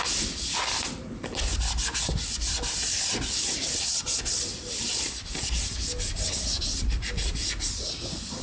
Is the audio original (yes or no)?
yes